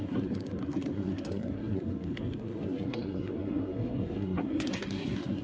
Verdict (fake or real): fake